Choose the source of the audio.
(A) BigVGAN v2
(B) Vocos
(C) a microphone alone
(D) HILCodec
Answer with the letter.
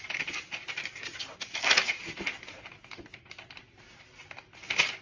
C